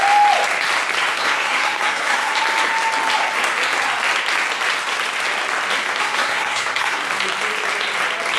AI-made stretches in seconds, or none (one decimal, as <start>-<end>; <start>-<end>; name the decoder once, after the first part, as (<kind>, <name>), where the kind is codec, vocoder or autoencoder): 1.1-2.3 (codec, SNAC); 6.0-7.0